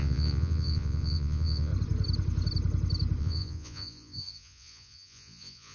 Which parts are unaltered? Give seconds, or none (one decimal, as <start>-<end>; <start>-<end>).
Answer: 1.7-3.2